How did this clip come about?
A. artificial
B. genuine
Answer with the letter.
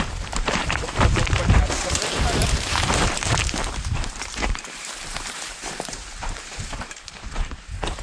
A